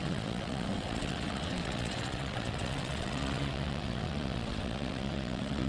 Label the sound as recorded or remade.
remade